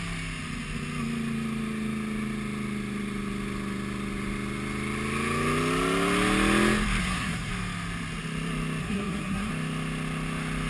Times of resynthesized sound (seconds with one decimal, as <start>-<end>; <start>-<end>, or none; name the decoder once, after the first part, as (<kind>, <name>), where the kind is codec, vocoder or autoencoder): 7.0-7.5 (codec, SNAC); 8.8-9.5